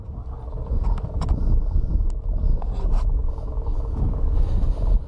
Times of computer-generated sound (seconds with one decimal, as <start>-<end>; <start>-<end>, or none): none